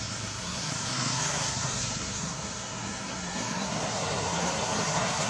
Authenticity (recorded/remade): remade